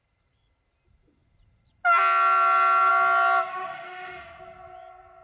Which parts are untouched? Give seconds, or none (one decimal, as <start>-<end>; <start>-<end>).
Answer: 0.0-3.5; 4.4-5.2